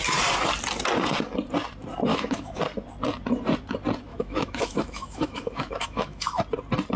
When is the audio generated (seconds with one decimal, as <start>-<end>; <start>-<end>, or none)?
2.1-2.6; 4.1-6.4